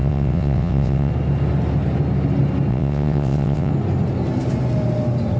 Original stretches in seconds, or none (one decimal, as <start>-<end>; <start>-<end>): 1.1-2.7; 3.7-5.4